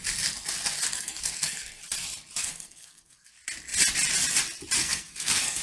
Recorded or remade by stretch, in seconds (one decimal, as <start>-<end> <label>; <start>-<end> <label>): 0.0-0.9 recorded; 0.9-1.8 remade; 1.8-2.4 recorded; 2.4-3.3 remade; 3.3-4.8 recorded; 4.8-5.6 remade